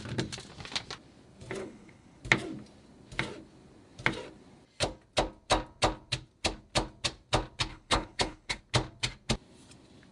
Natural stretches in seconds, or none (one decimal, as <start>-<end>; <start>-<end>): 0.0-1.6; 2.2-7.7; 8.6-10.1